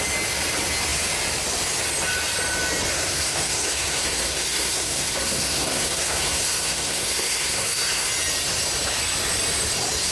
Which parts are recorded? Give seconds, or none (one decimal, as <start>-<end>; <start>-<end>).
0.0-2.9; 8.1-10.1